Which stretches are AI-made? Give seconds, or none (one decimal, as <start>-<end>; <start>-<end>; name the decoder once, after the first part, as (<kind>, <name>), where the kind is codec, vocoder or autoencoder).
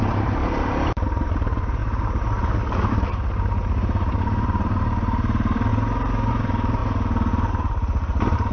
0.0-1.8 (vocoder, BigVGAN v2); 2.9-5.7; 6.3-6.8; 7.3-8.5